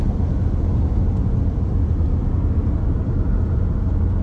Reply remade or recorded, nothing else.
recorded